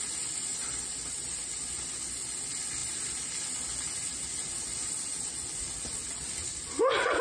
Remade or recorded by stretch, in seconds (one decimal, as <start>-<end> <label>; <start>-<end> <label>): 0.0-0.5 recorded; 0.5-1.4 remade; 1.4-2.8 recorded; 2.8-3.4 remade; 3.4-7.2 recorded